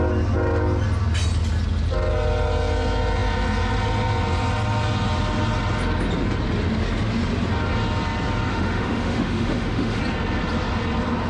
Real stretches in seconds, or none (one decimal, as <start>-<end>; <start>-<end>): 0.0-8.5; 10.0-11.3